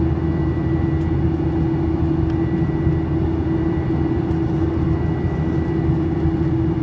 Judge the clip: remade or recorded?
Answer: recorded